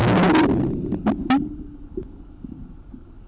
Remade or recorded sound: recorded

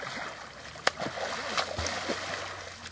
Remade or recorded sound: recorded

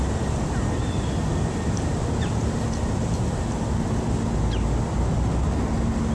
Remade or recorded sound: recorded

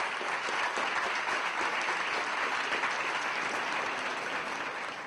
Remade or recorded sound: recorded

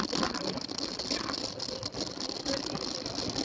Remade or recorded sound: recorded